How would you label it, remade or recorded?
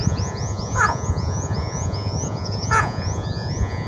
remade